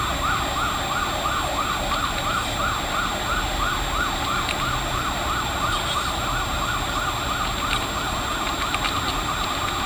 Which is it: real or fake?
real